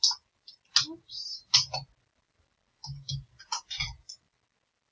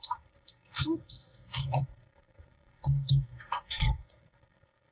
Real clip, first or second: first